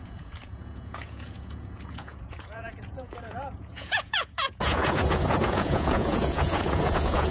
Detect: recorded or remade remade